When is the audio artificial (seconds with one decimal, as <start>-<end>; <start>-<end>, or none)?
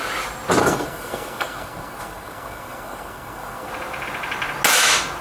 0.6-3.7